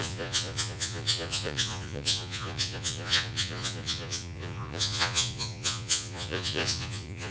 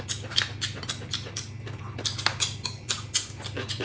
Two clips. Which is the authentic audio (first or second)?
second